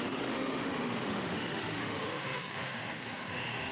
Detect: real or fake fake